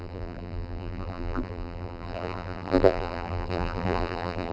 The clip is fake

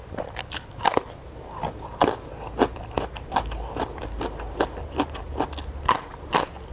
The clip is real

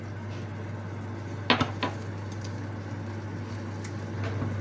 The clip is real